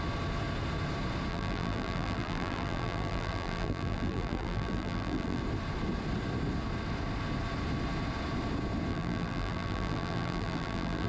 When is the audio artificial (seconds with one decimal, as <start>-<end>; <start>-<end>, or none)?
1.3-5.4; 8.9-11.1